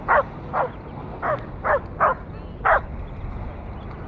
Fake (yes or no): no